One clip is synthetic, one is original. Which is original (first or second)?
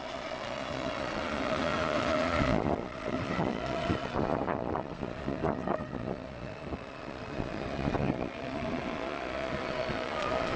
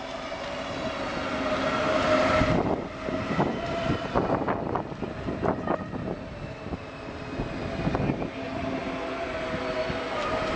second